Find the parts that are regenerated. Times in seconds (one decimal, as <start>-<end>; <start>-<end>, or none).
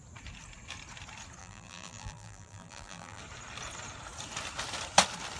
1.4-3.2